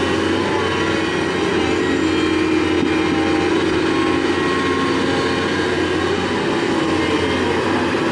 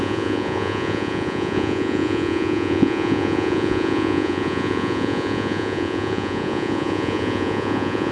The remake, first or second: second